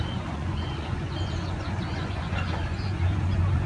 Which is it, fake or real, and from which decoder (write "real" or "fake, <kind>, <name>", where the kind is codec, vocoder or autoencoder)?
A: fake, vocoder, Vocos